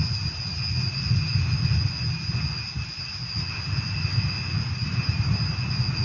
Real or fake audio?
real